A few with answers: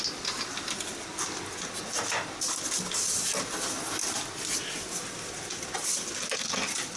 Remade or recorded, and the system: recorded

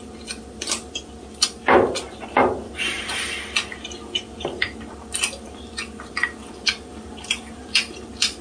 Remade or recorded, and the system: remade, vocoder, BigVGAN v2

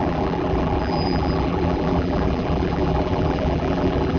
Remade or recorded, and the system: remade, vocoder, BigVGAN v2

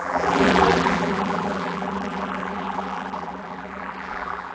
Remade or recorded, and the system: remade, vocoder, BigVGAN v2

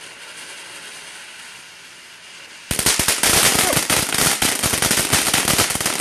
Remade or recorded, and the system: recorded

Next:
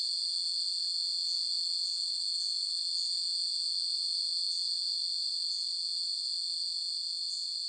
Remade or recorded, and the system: remade, vocoder, BigVGAN v2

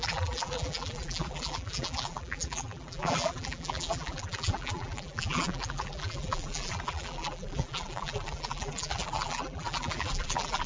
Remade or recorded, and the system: remade, vocoder, BigVGAN v2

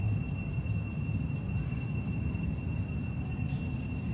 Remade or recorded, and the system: recorded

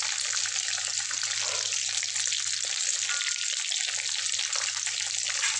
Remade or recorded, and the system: recorded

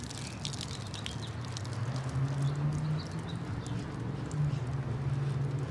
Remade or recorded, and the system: recorded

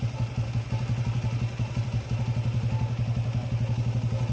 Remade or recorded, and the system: recorded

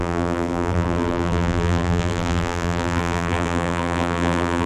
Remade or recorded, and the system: remade, vocoder, BigVGAN v2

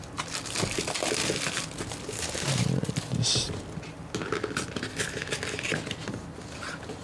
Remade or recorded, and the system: recorded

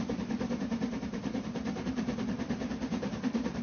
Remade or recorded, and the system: remade, vocoder, BigVGAN v2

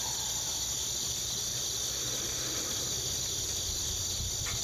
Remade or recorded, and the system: recorded